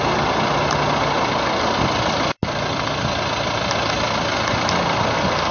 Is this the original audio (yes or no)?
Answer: yes